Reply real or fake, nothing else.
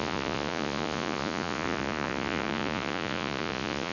fake